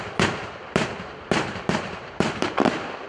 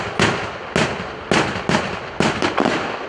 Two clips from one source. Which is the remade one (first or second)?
first